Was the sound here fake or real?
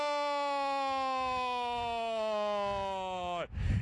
real